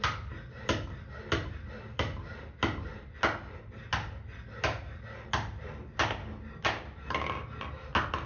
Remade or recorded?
recorded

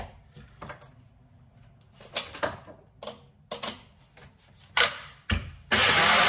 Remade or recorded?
recorded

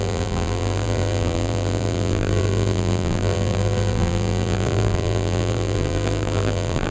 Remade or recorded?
remade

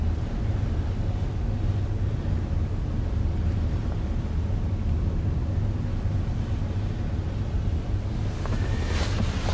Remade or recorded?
recorded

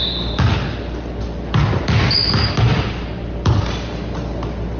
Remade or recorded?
recorded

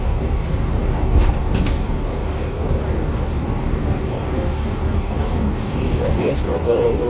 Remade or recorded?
remade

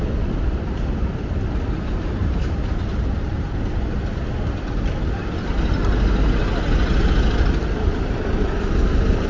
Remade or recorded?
recorded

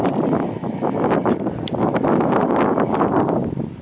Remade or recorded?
recorded